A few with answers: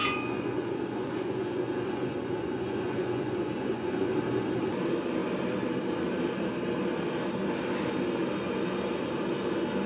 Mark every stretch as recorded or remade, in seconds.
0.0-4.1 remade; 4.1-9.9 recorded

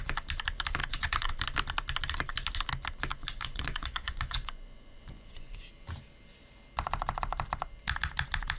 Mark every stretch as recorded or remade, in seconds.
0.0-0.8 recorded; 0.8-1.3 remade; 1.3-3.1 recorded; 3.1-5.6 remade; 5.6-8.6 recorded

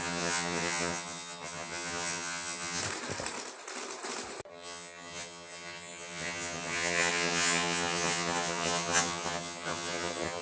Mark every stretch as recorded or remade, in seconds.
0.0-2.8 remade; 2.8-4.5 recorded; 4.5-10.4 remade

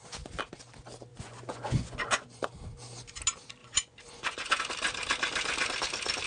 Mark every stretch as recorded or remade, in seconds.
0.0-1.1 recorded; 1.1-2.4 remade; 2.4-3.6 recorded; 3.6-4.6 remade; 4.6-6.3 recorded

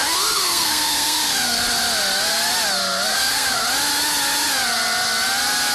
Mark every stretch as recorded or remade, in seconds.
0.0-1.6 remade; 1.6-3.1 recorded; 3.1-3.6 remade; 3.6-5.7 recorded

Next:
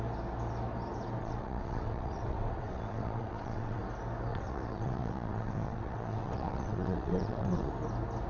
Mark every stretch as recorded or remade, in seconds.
0.0-1.2 recorded; 1.2-3.8 remade; 3.8-4.3 recorded; 4.3-7.7 remade; 7.7-8.3 recorded

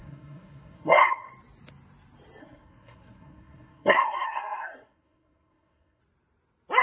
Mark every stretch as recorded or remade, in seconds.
0.0-1.3 remade; 1.3-2.4 recorded; 2.4-6.0 remade; 6.0-6.8 recorded

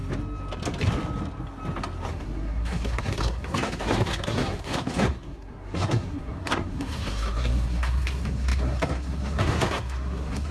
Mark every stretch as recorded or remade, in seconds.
0.0-2.1 recorded; 2.1-10.5 remade